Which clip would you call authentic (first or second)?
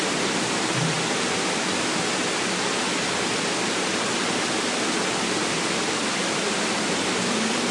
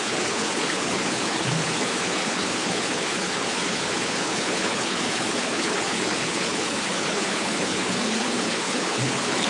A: first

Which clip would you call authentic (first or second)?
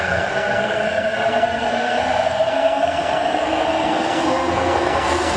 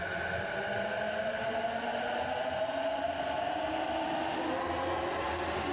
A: second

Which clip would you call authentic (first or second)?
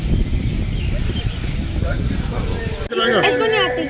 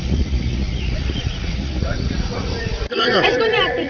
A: first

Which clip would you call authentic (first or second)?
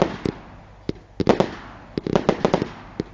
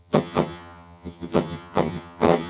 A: first